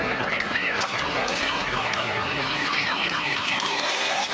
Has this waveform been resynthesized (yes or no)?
yes